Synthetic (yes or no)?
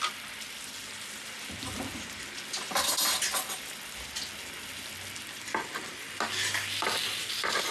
no